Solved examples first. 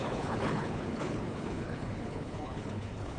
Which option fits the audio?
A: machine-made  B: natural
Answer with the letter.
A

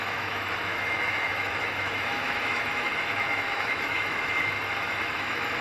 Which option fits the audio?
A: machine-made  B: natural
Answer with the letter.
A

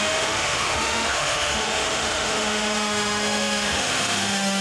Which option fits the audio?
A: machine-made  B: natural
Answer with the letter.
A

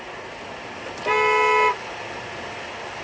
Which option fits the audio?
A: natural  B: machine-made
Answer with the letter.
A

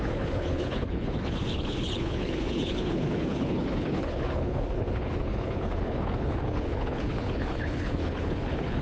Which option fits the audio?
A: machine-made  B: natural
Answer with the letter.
A